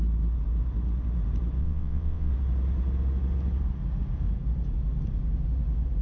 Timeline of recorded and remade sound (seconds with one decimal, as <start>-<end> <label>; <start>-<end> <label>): 0.0-1.6 recorded; 1.6-2.3 remade; 2.3-6.0 recorded

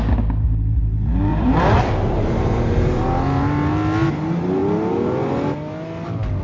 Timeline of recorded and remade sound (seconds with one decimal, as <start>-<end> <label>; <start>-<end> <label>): 0.0-1.3 recorded; 1.3-3.0 remade; 3.0-6.4 recorded

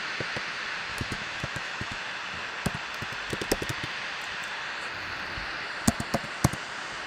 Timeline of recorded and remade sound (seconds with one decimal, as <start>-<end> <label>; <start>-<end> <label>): 0.0-0.9 recorded; 0.9-2.0 remade; 2.0-7.1 recorded

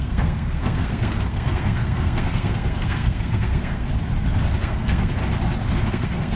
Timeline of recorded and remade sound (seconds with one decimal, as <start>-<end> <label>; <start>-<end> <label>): 0.0-3.9 remade; 3.9-4.6 recorded; 4.6-5.2 remade; 5.2-5.9 recorded; 5.9-6.4 remade

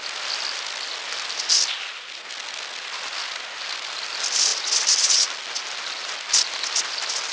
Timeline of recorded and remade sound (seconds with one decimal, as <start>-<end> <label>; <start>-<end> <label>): 0.0-7.3 recorded